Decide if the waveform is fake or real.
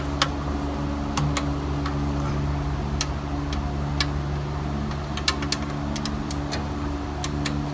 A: real